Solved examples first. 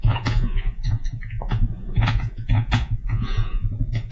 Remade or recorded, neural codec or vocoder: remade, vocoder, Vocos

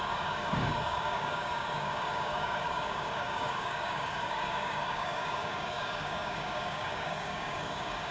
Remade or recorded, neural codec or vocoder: remade, codec, DAC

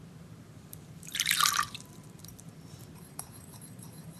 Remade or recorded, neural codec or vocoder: remade, vocoder, BigVGAN v2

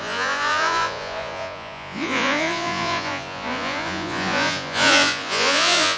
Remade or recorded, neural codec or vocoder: remade, vocoder, Vocos